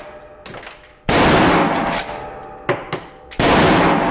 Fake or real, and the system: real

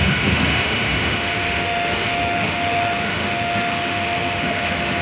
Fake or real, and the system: fake, autoencoder, DAC-VAE